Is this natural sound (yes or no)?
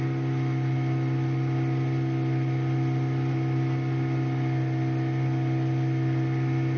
yes